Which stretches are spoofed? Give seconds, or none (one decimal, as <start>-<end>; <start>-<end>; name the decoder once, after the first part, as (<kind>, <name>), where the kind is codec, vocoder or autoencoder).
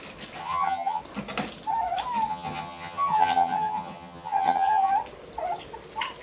0.4-1.0 (vocoder, HiFi-GAN); 2.3-4.9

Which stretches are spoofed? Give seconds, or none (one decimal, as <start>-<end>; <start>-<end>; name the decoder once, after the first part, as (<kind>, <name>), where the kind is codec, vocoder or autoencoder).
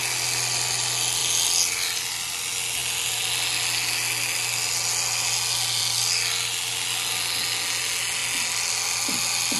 none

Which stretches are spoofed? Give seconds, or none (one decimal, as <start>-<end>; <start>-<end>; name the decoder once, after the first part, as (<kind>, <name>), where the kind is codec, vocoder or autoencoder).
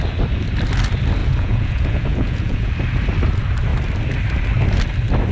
1.2-2.7 (vocoder, Vocos)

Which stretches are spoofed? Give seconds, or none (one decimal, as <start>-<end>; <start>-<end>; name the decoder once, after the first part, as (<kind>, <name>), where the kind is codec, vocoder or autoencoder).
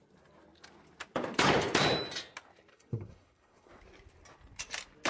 2.7-3.7 (codec, SNAC)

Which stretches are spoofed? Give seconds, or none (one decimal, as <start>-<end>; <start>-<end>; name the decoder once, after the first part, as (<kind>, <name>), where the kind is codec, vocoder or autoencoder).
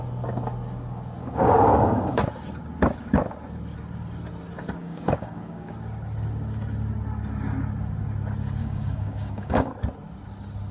1.2-2.2 (codec, DAC); 4.8-5.7; 8.6-9.7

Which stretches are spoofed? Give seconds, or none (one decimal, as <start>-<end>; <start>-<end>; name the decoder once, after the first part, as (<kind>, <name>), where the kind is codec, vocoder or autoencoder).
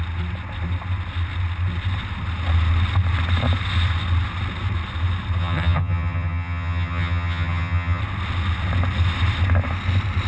5.4-8.0 (vocoder, HiFi-GAN)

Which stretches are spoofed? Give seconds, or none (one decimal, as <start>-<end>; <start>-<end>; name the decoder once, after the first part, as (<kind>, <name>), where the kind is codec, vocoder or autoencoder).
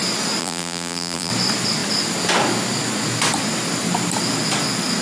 0.4-1.3 (vocoder, BigVGAN v2)